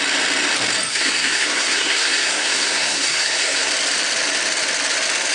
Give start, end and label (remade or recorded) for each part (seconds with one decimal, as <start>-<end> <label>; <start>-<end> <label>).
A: 0.0-0.9 recorded; 0.9-3.7 remade; 3.7-5.3 recorded